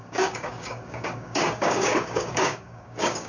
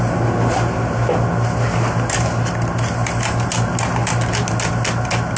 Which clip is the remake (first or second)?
first